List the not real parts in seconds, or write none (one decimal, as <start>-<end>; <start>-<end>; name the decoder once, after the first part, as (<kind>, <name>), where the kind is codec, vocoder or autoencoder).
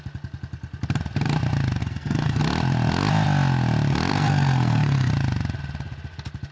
1.8-2.4 (codec, SNAC); 4.1-5.1